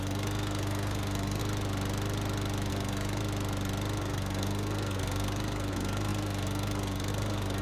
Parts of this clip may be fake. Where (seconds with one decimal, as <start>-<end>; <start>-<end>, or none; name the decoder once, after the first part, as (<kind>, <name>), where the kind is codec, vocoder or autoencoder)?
0.0-1.4 (codec, SNAC); 2.7-3.2; 4.0-7.6